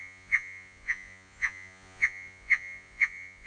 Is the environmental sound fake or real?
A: fake